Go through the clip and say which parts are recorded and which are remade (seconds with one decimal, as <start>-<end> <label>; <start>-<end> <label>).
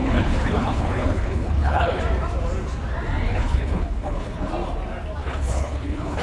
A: 0.0-2.0 remade; 2.0-3.3 recorded; 3.3-4.5 remade; 4.5-5.2 recorded; 5.2-6.2 remade